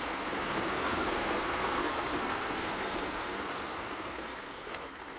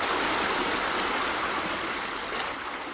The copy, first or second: first